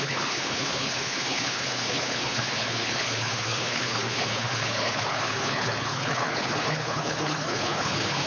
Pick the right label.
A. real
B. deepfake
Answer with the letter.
B